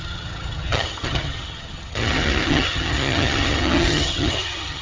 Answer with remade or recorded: remade